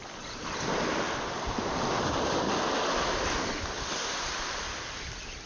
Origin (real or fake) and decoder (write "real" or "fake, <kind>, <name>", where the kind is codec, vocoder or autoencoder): real